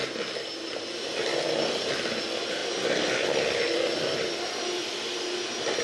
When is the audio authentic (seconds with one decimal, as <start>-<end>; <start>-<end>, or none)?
0.0-5.8